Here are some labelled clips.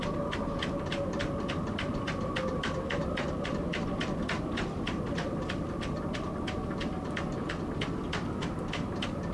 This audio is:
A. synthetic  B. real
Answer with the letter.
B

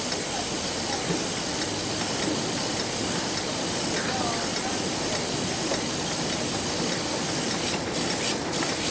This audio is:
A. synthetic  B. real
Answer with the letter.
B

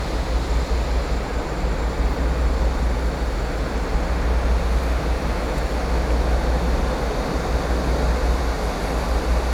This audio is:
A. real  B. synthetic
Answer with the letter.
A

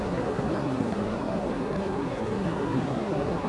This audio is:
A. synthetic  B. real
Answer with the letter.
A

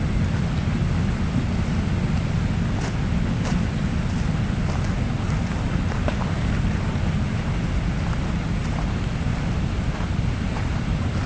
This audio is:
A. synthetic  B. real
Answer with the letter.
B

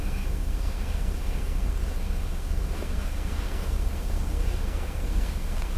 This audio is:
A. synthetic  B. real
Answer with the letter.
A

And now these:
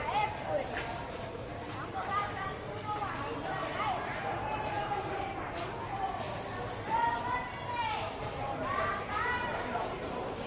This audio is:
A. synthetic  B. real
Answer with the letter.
A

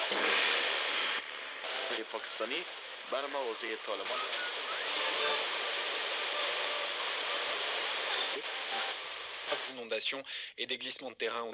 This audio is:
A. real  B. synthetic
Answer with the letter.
B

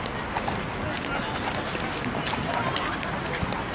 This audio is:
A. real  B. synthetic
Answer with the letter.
A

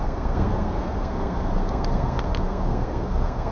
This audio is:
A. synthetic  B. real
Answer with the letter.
A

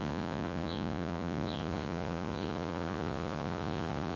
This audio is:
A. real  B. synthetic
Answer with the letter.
B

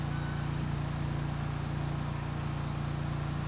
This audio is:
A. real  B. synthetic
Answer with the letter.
A